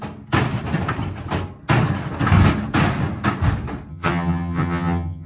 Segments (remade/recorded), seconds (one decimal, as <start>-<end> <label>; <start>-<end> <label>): 0.0-3.9 recorded; 3.9-5.3 remade